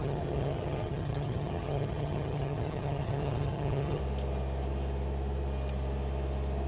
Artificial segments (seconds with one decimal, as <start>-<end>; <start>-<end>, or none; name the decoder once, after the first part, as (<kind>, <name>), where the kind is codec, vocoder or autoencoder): 0.0-4.0 (vocoder, HiFi-GAN)